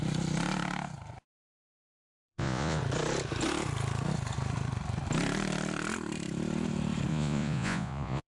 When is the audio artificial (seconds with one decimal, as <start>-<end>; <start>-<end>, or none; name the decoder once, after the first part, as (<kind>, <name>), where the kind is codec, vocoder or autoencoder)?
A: 1.6-2.8 (vocoder, Vocos); 7.1-8.3